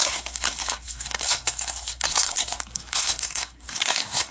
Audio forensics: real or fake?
fake